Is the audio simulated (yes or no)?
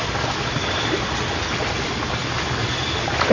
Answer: no